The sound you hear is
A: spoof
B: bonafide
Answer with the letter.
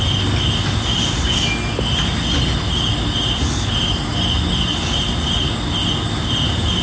B